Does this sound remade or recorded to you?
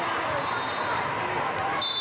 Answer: recorded